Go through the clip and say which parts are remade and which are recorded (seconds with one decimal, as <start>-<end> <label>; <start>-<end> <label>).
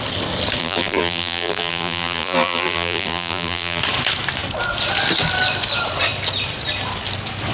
0.0-0.6 recorded; 0.6-3.8 remade; 3.8-7.5 recorded